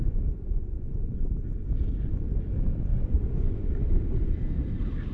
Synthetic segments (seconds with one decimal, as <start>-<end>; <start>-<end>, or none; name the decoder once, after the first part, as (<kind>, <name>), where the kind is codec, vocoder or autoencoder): 0.0-0.9 (vocoder, Vocos); 2.9-3.7